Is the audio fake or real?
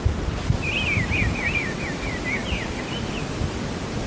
real